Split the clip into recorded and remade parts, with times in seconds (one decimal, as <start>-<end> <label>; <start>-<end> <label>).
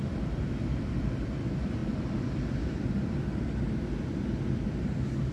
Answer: 0.0-5.3 recorded